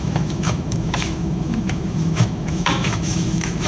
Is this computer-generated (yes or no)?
yes